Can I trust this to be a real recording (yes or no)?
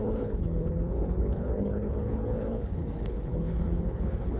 no